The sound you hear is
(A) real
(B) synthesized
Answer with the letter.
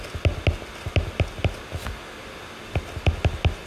A